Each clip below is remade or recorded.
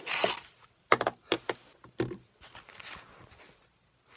recorded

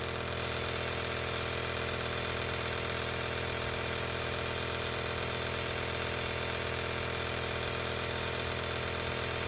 recorded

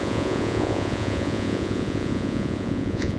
remade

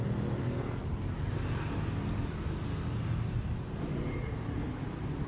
recorded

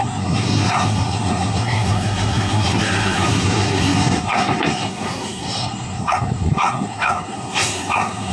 remade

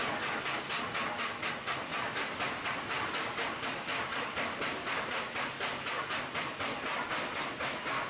recorded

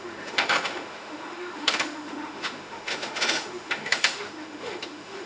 remade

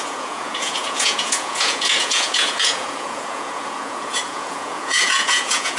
remade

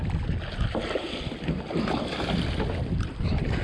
recorded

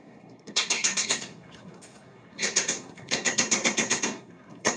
remade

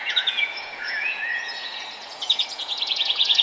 remade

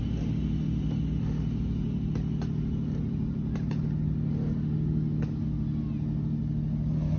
recorded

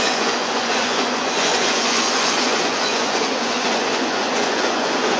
remade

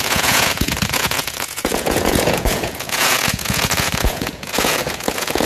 remade